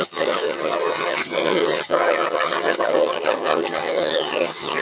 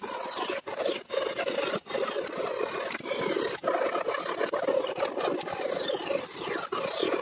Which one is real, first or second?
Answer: second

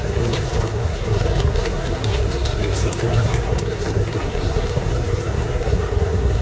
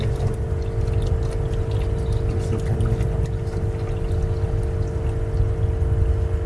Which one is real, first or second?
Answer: second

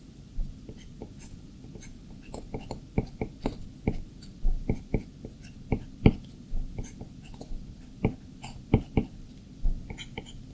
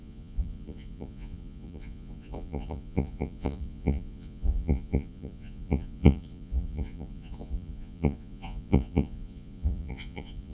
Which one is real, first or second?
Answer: first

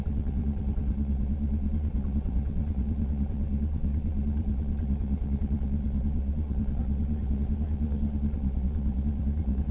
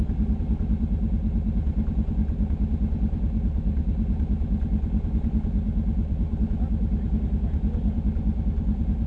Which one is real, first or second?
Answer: second